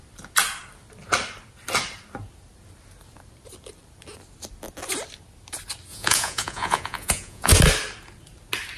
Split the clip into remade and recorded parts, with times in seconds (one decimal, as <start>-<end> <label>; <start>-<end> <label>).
0.0-5.9 recorded; 5.9-7.5 remade; 7.5-8.8 recorded